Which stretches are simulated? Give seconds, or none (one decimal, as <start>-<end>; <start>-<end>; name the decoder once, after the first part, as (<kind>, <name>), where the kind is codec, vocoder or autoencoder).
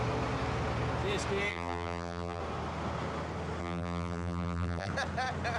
1.5-2.4 (vocoder, BigVGAN v2); 3.6-4.9